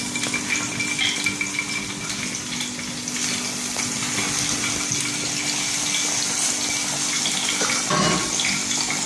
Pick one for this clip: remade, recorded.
recorded